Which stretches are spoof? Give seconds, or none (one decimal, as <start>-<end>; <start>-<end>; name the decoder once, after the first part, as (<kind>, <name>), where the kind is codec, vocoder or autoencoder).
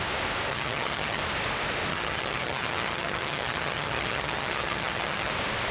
0.5-1.2 (vocoder, HiFi-GAN); 1.9-5.3